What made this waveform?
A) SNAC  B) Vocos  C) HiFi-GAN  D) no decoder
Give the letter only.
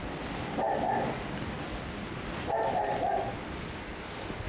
D